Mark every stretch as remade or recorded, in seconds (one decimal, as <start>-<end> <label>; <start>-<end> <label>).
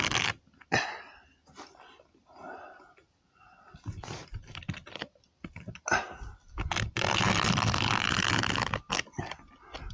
0.0-4.2 recorded; 4.2-8.3 remade; 8.3-9.9 recorded